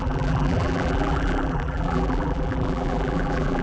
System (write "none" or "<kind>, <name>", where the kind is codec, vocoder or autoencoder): vocoder, BigVGAN v2